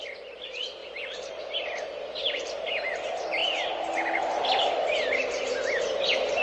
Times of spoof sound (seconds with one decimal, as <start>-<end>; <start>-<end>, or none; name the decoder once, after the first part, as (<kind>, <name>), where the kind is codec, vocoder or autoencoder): 3.4-4.2 (vocoder, BigVGAN v2)

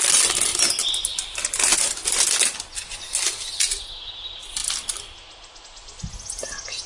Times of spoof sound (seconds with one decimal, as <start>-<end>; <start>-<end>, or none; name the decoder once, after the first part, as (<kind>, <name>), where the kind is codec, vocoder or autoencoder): none

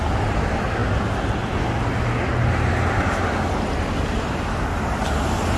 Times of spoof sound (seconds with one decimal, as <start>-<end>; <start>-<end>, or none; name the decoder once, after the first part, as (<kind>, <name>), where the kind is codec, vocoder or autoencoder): none

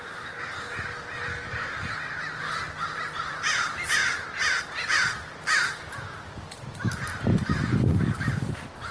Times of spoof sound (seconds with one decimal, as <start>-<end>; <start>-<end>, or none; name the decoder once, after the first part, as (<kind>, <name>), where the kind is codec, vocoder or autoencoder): 1.3-1.9 (codec, DAC); 7.3-8.5

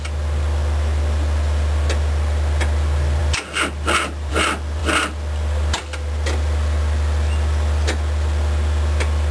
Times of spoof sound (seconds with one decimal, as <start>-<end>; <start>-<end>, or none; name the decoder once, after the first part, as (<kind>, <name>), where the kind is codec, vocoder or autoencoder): none

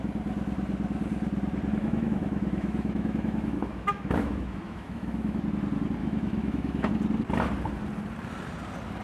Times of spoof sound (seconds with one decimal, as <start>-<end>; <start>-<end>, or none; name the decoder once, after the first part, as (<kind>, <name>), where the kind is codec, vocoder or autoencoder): 1.8-5.4 (autoencoder, DAC-VAE); 6.0-6.9

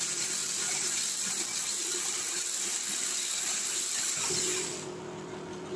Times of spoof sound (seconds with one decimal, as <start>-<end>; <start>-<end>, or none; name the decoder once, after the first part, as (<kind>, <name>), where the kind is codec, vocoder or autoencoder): none

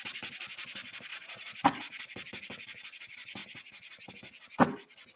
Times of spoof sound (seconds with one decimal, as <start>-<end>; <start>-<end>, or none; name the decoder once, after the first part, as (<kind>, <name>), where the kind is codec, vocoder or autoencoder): 1.1-2.0 (vocoder, Vocos); 3.4-4.1